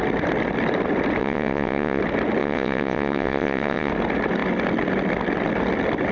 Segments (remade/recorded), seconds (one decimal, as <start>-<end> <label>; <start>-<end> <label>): 0.0-1.2 recorded; 1.2-2.0 remade; 2.0-2.4 recorded; 2.4-3.9 remade; 3.9-6.1 recorded